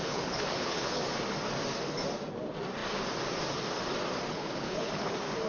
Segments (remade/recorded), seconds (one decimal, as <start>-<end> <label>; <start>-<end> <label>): 0.0-1.0 remade; 1.0-4.3 recorded; 4.3-5.1 remade; 5.1-5.5 recorded